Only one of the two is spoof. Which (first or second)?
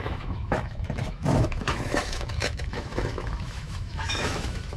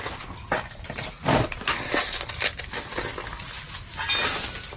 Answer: first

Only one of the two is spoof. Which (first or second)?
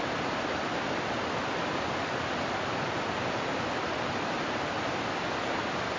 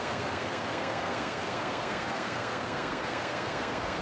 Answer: second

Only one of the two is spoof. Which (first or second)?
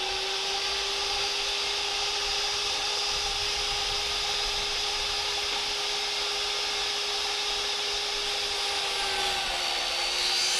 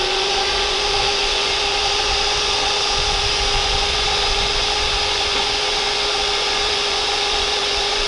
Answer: second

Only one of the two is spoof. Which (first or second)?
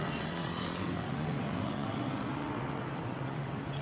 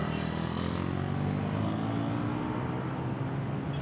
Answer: first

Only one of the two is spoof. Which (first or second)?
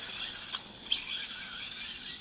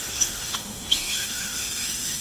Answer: second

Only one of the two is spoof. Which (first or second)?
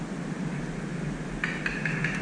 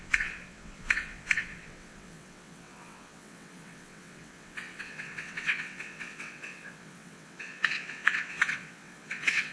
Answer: second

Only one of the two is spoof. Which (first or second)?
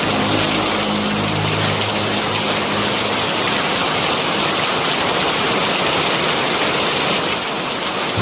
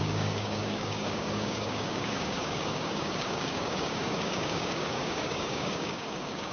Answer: second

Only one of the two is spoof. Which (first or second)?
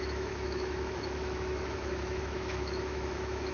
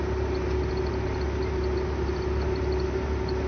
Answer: first